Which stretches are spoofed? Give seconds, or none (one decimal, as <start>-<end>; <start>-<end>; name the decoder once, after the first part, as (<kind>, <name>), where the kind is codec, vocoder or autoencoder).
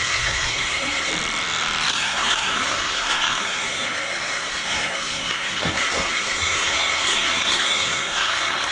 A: 0.0-1.1 (codec, SNAC); 1.9-8.7